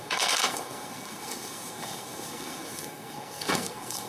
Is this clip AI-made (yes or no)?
yes